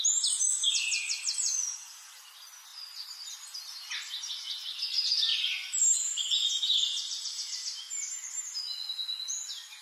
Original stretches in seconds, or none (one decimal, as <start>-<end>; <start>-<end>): 0.0-5.3; 8.6-9.8

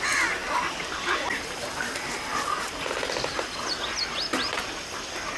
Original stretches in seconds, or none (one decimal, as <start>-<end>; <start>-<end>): 0.0-2.3; 3.5-5.4